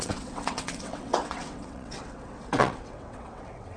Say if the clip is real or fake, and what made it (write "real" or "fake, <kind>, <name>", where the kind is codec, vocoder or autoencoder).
fake, vocoder, WaveNeXt